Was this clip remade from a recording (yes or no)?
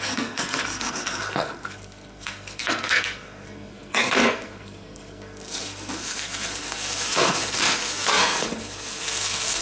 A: yes